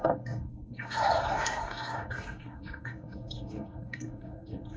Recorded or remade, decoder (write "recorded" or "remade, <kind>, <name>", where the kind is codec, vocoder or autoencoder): remade, codec, SNAC